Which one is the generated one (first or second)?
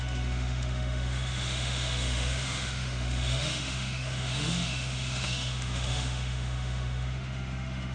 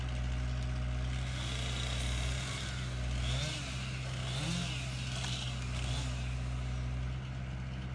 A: first